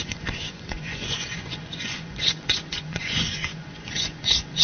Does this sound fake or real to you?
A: fake